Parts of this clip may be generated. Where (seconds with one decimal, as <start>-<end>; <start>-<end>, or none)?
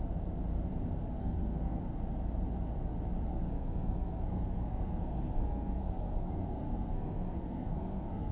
1.2-1.8; 3.3-8.3